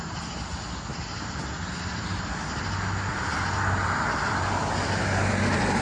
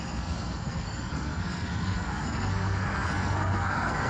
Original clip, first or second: first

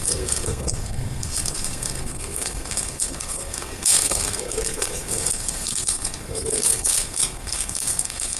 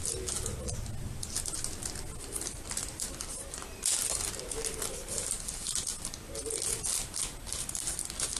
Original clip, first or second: second